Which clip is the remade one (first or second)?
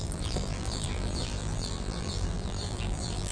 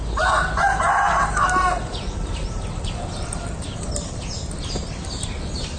first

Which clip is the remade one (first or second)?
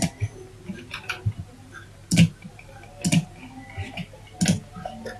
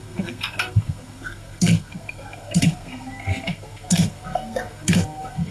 second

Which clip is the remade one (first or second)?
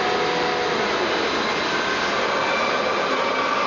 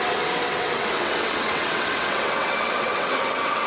second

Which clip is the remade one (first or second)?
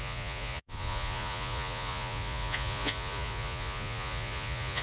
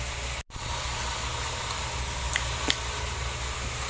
first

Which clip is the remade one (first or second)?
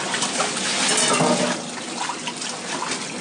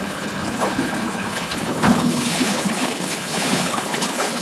second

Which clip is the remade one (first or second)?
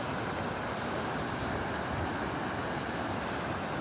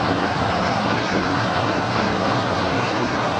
second